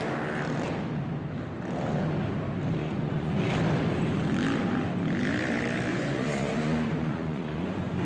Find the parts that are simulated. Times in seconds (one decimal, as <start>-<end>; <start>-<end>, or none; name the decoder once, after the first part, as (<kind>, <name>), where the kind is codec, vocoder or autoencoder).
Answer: 2.8-3.4 (vocoder, Vocos); 5.9-8.1